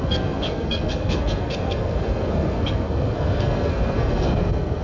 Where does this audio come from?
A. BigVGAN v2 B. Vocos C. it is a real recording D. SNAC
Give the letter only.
D